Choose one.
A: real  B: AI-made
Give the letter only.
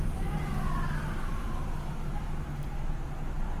B